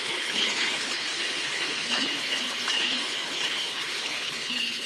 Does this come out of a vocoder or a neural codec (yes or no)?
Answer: yes